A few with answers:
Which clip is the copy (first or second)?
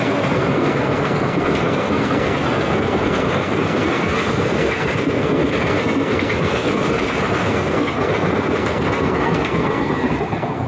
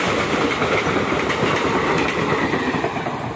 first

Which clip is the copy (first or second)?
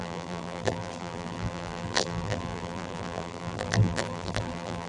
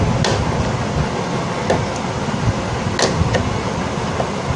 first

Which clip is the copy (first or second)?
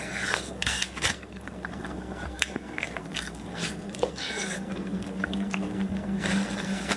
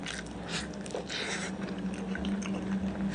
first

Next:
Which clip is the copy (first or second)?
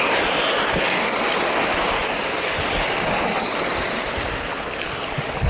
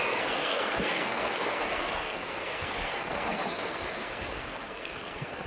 second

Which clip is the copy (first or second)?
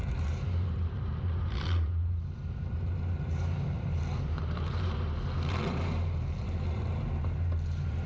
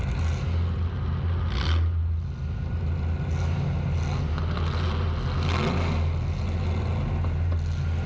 first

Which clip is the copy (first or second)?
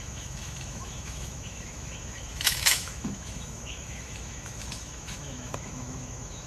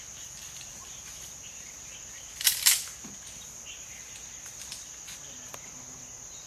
first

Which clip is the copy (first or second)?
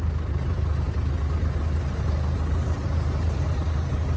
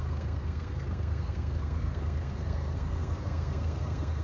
second